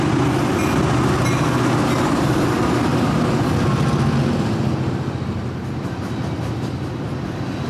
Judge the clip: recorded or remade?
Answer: recorded